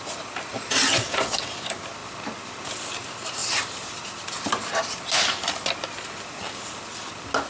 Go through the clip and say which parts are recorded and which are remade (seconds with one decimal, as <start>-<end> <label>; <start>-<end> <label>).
0.0-7.5 recorded